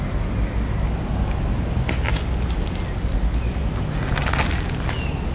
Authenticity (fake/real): real